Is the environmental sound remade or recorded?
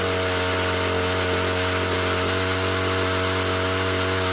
recorded